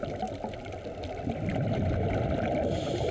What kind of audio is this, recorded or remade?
recorded